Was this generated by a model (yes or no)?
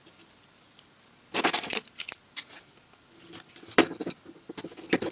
no